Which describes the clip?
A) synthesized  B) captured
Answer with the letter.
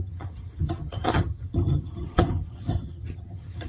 A